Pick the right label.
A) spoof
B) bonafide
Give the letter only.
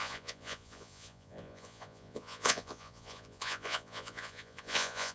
A